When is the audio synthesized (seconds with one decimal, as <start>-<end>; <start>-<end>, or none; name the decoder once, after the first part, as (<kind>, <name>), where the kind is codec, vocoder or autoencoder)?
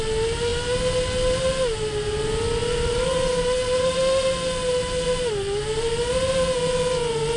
2.6-4.0 (vocoder, BigVGAN v2); 4.6-5.3